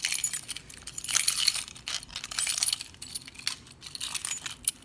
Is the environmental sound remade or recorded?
remade